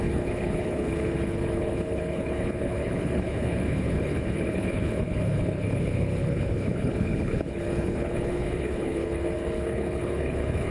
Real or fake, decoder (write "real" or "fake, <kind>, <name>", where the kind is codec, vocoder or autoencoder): fake, codec, HILCodec